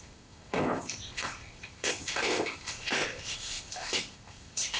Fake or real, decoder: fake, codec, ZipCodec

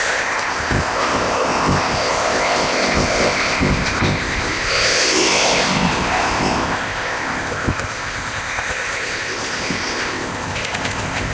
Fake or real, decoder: fake, codec, ZipCodec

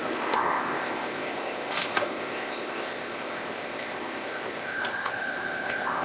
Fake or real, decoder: fake, codec, ZipCodec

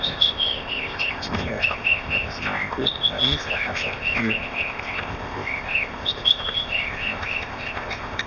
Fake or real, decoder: fake, codec, ZipCodec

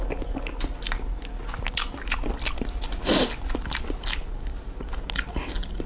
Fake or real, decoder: real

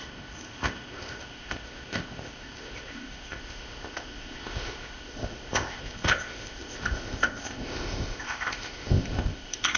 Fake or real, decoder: fake, codec, ZipCodec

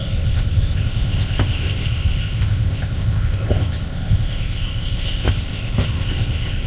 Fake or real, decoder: fake, codec, ZipCodec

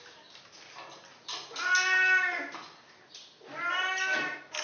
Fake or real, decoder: real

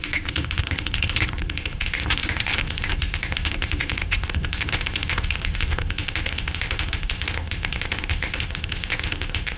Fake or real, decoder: fake, codec, ZipCodec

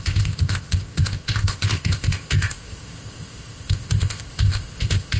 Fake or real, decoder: fake, codec, ZipCodec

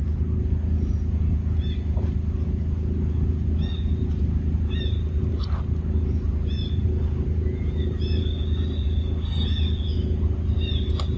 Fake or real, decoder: real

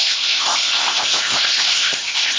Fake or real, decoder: fake, codec, ZipCodec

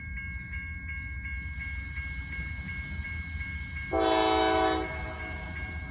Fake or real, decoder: real